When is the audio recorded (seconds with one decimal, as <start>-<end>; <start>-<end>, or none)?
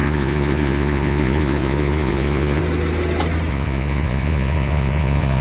2.6-3.5